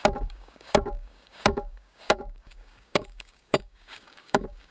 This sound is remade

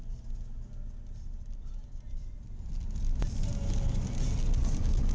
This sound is recorded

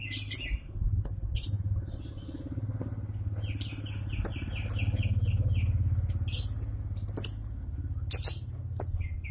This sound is recorded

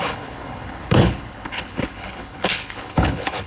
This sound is remade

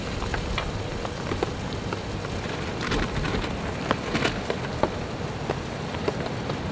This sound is recorded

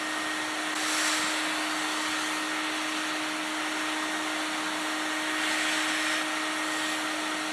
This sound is recorded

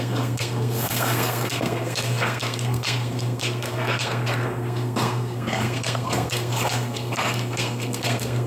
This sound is remade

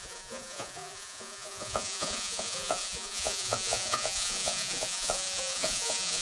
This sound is remade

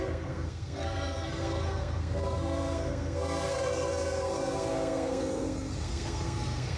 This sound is remade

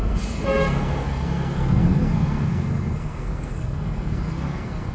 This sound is remade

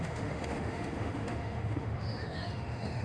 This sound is remade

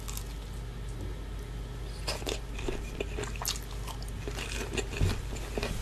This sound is recorded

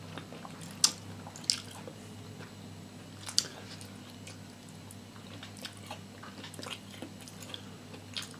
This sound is recorded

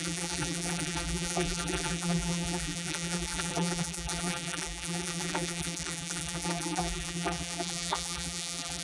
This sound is remade